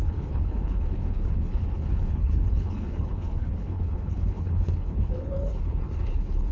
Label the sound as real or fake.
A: fake